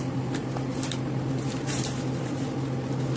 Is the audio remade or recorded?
recorded